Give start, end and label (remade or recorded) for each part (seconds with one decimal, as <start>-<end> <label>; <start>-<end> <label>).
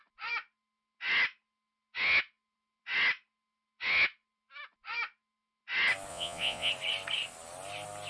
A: 0.0-6.1 recorded; 6.1-6.7 remade; 6.7-8.1 recorded